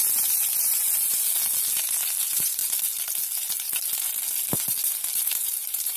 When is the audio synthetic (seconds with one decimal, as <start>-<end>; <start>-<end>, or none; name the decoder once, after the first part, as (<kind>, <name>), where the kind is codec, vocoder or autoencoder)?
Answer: 2.2-2.6 (vocoder, BigVGAN v2); 5.2-6.0